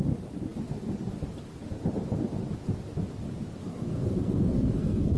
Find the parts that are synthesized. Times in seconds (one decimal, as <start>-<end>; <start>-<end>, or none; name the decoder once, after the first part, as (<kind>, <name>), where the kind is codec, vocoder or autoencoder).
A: 3.6-5.2 (codec, SNAC)